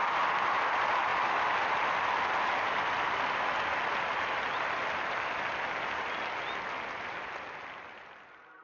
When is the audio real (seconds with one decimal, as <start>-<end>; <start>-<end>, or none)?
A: 0.0-8.6

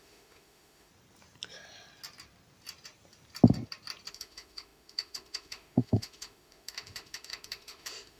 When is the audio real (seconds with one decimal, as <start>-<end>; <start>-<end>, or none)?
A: 0.9-4.1

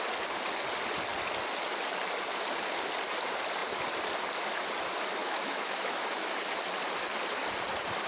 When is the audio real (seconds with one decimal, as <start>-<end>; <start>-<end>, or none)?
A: 0.0-5.2; 6.3-8.1

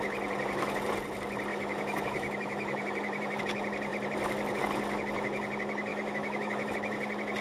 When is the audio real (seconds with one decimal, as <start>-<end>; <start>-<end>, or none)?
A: 0.0-1.5; 3.4-5.9; 6.7-7.4